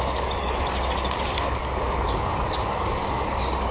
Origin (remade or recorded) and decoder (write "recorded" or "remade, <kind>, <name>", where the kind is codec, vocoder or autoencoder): remade, codec, DAC